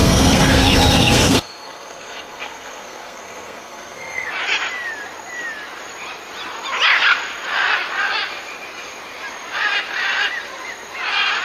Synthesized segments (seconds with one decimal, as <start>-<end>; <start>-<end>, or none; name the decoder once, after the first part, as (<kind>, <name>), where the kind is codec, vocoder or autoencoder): 0.0-4.3 (codec, SNAC)